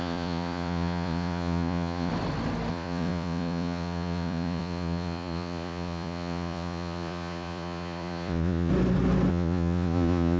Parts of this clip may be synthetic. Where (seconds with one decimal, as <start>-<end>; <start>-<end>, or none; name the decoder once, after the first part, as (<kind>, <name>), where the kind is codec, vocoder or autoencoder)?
0.0-2.1 (vocoder, Vocos); 2.7-8.7; 9.3-10.4